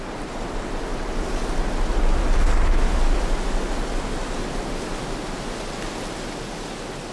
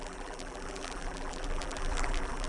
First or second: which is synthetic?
second